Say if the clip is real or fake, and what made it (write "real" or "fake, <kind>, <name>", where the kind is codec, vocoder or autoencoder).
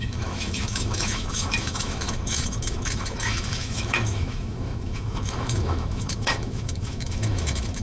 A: fake, autoencoder, DAC-VAE